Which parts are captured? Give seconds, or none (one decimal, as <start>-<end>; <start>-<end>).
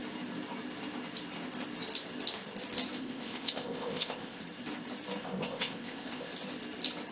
0.0-3.0; 4.4-5.2; 6.3-7.1